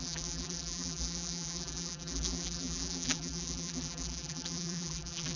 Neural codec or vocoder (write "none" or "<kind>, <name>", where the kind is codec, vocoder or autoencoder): vocoder, BigVGAN v2